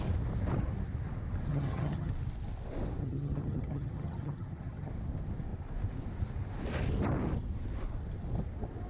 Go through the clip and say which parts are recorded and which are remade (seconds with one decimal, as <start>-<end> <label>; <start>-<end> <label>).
0.0-1.5 recorded; 1.5-2.1 remade; 2.1-3.0 recorded; 3.0-4.9 remade; 4.9-8.9 recorded